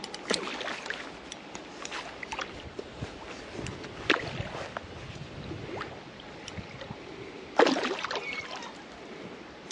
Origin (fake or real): real